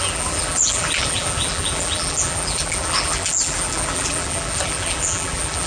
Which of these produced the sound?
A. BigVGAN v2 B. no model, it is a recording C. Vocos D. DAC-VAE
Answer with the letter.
A